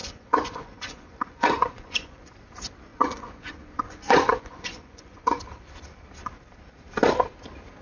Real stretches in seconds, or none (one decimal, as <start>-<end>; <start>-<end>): 2.3-2.9; 5.4-7.8